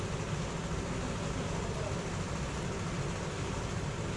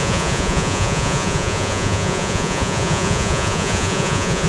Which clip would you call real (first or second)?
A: first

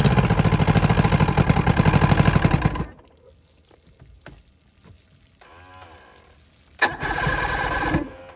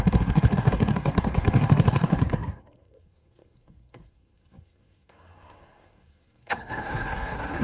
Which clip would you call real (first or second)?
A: first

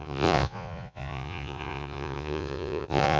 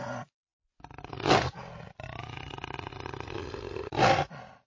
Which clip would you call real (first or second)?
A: second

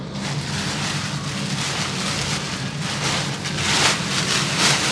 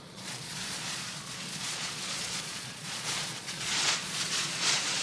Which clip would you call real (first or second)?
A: first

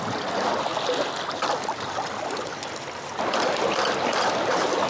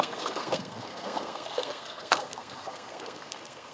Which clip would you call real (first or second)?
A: first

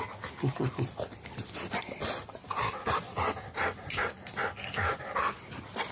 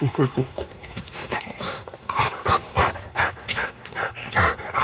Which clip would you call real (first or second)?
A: first